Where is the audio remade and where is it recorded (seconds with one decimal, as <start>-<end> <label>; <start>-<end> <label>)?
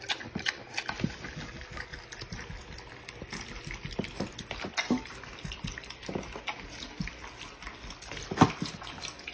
0.0-9.3 recorded